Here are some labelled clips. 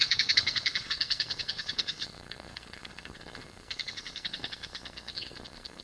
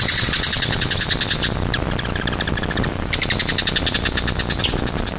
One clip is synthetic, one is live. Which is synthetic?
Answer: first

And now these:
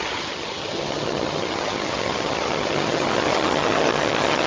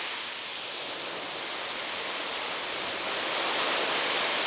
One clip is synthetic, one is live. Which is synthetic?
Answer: first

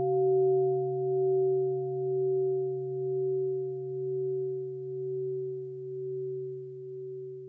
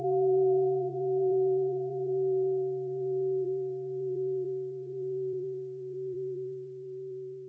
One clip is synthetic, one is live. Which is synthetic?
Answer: second